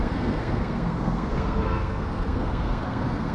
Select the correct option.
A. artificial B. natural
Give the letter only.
A